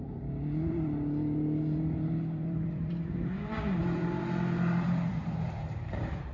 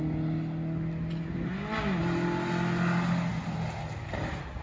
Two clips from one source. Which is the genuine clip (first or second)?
second